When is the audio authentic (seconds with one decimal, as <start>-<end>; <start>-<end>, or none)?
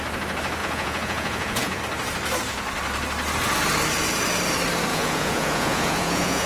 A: 0.0-0.6; 1.8-4.9